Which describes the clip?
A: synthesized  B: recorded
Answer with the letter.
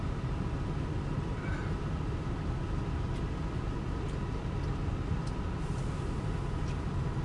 B